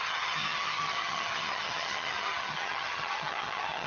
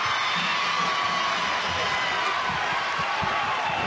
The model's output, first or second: first